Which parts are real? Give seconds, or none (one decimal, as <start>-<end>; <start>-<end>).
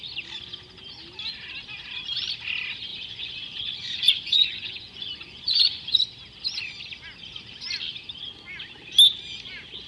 0.0-2.9; 6.0-9.9